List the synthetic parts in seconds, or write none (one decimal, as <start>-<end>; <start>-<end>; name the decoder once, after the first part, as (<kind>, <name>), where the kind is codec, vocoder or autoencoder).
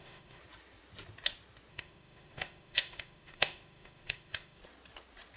0.0-0.4 (autoencoder, DAC-VAE); 1.7-4.6